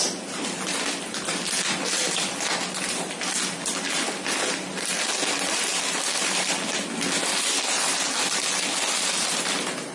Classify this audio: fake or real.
real